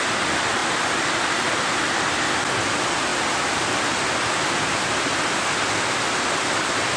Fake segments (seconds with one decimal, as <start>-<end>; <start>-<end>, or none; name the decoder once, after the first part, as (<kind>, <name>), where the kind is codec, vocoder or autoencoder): none

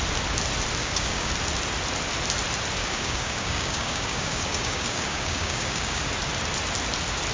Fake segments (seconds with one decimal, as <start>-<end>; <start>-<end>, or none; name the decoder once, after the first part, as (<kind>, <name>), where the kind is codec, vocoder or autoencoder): 0.8-1.3 (codec, DAC); 2.8-6.0

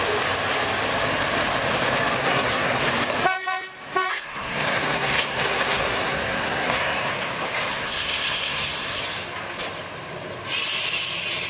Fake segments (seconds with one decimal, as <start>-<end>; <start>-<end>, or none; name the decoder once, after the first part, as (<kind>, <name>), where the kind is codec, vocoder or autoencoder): 2.2-2.8 (codec, SNAC); 4.1-7.1; 7.7-9.0

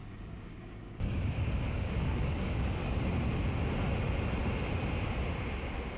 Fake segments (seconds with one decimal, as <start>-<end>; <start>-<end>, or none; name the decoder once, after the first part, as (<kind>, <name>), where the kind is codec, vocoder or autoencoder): 0.0-3.1 (codec, DAC)

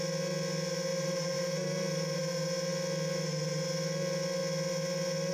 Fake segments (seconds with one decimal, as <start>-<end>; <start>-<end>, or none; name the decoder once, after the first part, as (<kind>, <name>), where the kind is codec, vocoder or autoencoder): 0.9-2.2 (vocoder, BigVGAN v2)

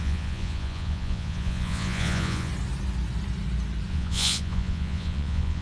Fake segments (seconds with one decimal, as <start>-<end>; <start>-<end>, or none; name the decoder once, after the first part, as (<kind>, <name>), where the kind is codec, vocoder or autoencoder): 0.0-2.5 (vocoder, Vocos); 3.9-5.6

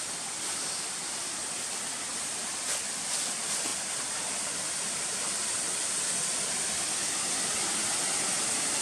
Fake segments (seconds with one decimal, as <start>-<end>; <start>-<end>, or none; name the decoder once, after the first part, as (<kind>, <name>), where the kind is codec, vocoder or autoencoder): none

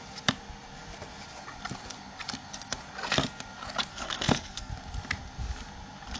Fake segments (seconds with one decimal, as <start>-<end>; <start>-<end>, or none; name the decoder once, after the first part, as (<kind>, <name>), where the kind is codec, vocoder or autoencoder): 3.9-4.7 (codec, SNAC)